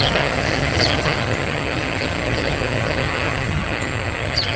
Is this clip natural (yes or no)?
no